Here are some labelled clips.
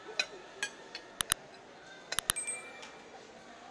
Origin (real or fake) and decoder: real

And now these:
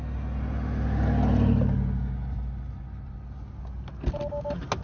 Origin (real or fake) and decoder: real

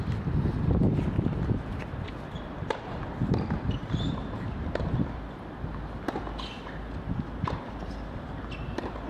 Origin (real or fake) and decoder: real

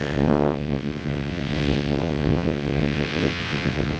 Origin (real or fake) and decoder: fake, vocoder, WaveNeXt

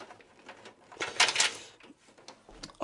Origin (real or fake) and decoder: real